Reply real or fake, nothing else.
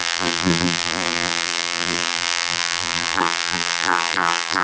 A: fake